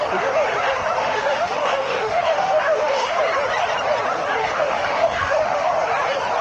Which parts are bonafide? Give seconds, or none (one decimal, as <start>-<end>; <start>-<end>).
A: 0.0-1.0; 3.2-4.4; 5.7-6.4